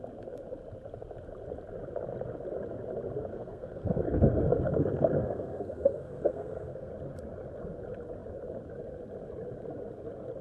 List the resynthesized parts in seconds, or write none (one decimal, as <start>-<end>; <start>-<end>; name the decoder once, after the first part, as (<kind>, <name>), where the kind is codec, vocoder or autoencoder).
3.3-6.9 (codec, SNAC)